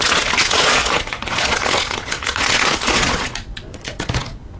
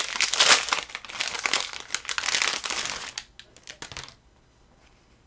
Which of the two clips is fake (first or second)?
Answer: first